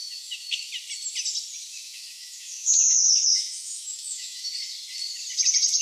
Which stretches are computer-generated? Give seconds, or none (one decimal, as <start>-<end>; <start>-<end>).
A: 0.0-0.7; 1.7-4.4